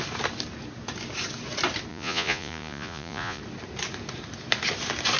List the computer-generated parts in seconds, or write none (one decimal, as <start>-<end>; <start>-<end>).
1.9-3.4